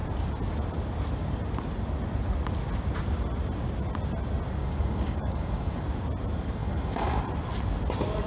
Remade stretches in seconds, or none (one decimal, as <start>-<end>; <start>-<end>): 4.6-5.8; 6.6-7.2